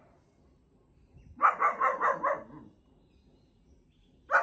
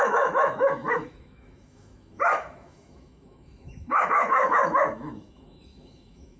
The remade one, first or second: second